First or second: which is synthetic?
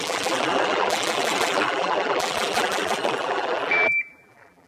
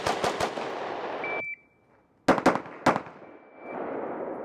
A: first